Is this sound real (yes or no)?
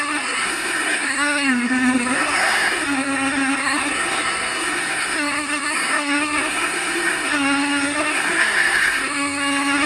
no